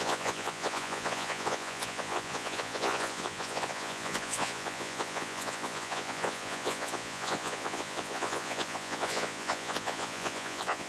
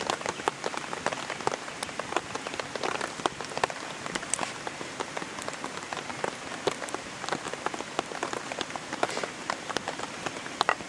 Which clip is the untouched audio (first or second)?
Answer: second